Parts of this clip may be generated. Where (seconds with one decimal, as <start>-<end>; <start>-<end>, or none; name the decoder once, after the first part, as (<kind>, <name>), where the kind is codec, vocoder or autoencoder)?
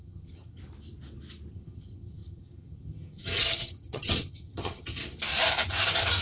0.0-0.6 (vocoder, HiFi-GAN); 1.5-5.0